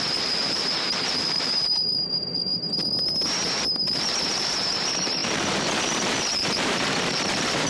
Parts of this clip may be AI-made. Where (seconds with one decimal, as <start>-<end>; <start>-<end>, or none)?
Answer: 0.0-2.5; 3.9-7.7